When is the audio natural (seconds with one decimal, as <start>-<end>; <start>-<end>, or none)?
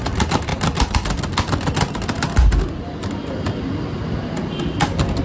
0.0-5.2